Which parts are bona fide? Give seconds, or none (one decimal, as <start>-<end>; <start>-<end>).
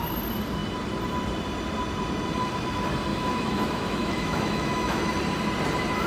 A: 0.0-3.1; 5.0-6.1